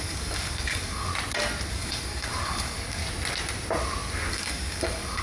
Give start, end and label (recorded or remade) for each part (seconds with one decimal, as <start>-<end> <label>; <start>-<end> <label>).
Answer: 0.0-1.1 remade; 1.1-1.7 recorded; 1.7-3.0 remade; 3.0-4.3 recorded; 4.3-5.2 remade